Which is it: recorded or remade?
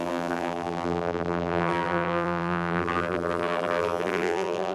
remade